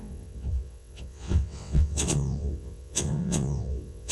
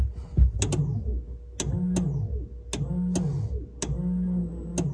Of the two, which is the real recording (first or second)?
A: second